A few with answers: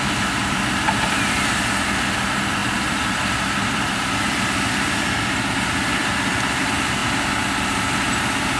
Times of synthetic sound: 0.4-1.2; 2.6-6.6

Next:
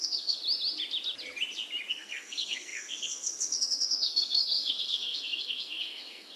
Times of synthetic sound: 0.0-0.4; 1.9-6.4

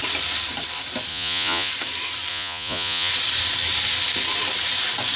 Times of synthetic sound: 1.1-1.7; 2.3-3.1